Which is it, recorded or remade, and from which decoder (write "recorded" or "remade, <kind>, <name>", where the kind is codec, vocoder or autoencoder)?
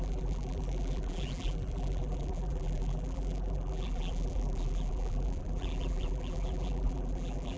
remade, vocoder, BigVGAN v2